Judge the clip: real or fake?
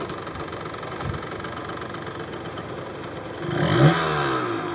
real